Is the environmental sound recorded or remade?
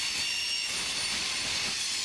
recorded